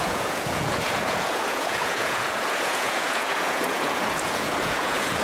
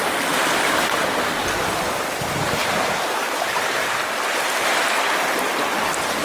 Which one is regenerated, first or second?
first